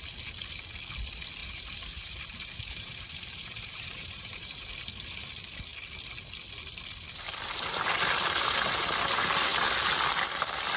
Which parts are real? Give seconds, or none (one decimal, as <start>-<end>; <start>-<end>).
0.0-1.4; 4.7-10.8